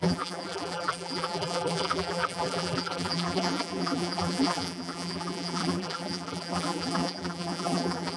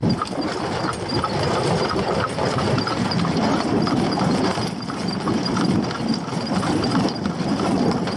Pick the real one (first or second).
second